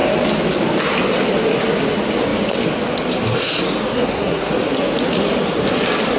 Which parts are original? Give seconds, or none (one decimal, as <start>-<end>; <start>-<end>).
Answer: 0.0-3.9; 4.5-6.2